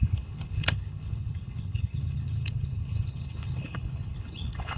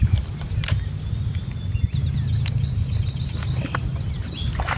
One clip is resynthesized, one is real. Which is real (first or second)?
second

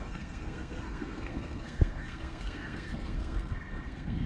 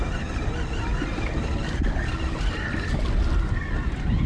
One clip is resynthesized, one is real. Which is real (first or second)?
second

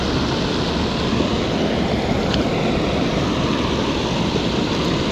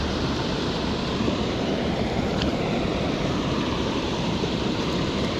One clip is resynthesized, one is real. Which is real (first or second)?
first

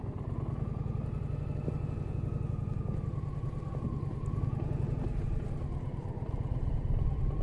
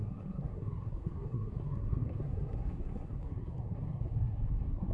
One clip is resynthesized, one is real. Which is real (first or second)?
first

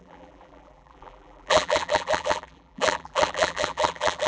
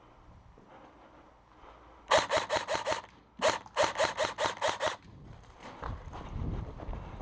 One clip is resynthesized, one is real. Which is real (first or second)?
second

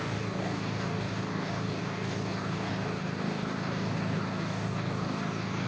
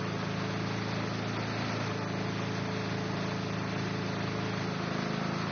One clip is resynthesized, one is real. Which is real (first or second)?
second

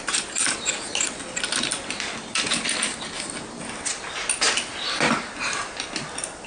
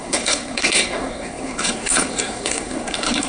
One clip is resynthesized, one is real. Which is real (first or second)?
first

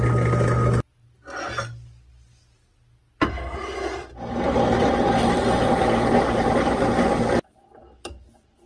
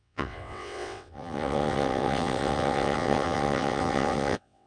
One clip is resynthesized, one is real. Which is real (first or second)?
first